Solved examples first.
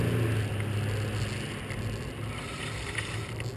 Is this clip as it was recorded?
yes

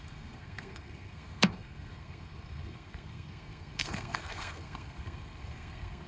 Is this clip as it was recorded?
no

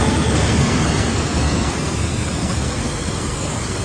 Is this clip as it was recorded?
no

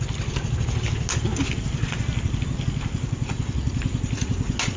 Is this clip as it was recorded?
yes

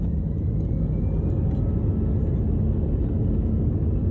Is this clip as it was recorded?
yes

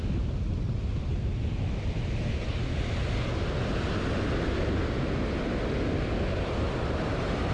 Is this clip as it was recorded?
yes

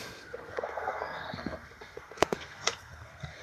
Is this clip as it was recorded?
no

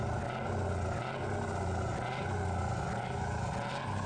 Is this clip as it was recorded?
yes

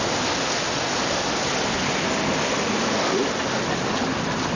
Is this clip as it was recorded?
yes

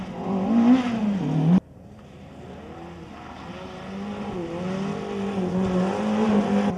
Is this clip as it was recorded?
yes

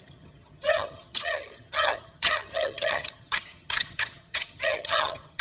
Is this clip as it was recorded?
no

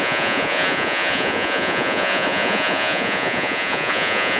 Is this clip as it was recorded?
no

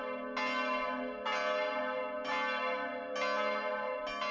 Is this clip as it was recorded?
yes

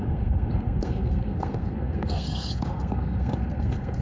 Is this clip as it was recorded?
no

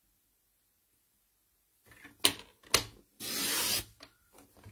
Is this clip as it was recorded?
yes